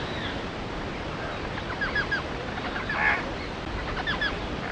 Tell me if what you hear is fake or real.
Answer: real